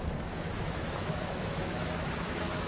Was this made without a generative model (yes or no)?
no